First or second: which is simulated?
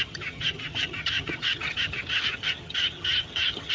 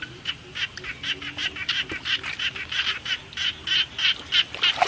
first